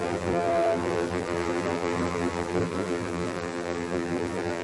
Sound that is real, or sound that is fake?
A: fake